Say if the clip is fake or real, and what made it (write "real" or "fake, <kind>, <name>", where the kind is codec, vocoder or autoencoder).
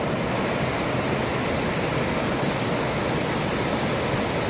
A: real